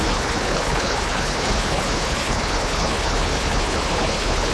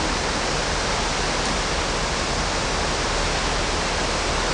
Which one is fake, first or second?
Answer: first